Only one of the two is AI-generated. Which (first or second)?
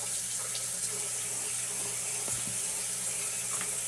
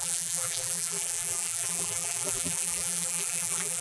second